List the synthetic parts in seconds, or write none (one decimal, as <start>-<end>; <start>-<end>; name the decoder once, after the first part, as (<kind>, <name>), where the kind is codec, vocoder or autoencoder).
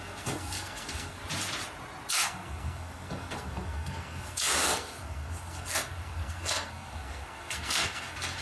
0.0-1.2 (codec, SNAC); 2.1-8.4